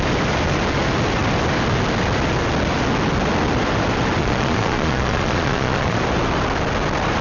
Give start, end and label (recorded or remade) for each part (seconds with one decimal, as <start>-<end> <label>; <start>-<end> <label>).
0.0-4.2 recorded; 4.2-6.0 remade; 6.0-7.2 recorded